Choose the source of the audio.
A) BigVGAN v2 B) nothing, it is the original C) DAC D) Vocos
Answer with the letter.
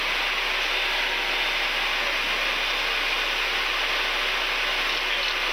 B